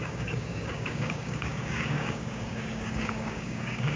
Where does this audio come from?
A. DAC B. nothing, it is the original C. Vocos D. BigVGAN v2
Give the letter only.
A